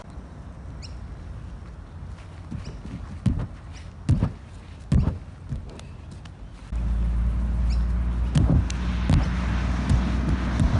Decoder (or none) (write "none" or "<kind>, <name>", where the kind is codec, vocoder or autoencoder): none